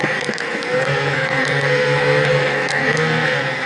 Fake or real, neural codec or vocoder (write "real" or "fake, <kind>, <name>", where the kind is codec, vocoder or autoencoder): fake, codec, SNAC